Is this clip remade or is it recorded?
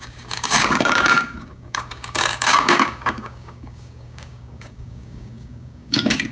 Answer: remade